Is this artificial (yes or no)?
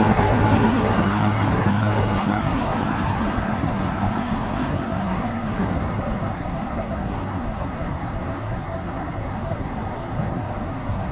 yes